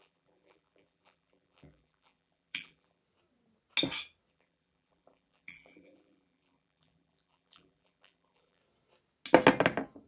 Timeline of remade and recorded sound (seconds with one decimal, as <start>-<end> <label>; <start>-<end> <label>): 0.0-3.0 remade; 3.0-4.3 recorded; 4.3-8.6 remade; 8.6-10.1 recorded